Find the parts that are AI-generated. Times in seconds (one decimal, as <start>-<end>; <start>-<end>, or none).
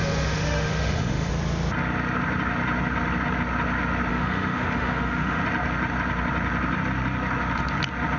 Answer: 0.0-1.3; 4.1-5.4